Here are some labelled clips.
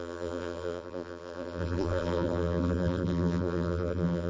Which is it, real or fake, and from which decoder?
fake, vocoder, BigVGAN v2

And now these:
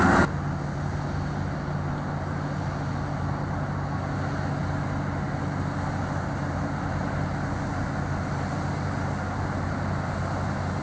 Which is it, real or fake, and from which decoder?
real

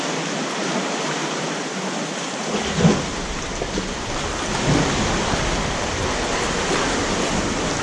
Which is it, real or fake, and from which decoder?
real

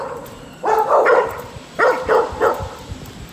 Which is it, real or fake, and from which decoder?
fake, vocoder, BigVGAN v2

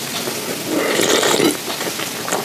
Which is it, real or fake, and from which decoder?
real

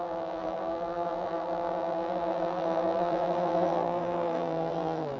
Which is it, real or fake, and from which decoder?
fake, vocoder, BigVGAN v2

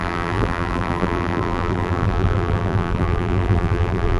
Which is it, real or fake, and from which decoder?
fake, vocoder, BigVGAN v2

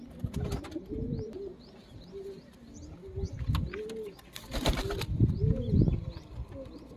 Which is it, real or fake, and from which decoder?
real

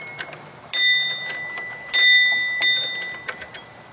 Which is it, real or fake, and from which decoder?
real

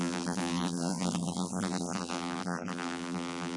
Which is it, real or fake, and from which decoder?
fake, vocoder, BigVGAN v2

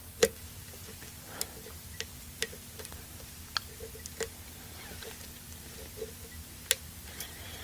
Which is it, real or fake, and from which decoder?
real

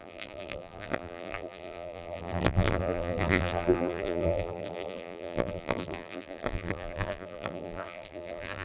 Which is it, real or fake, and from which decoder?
fake, vocoder, BigVGAN v2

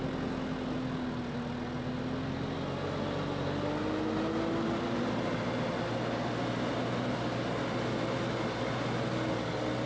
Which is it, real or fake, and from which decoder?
real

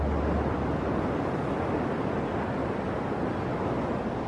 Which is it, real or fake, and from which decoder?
real